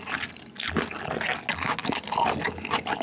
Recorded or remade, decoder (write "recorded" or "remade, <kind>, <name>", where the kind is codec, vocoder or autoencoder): recorded